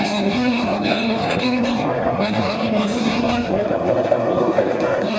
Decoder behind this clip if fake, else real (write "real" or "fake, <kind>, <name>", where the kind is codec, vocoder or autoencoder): fake, codec, SNAC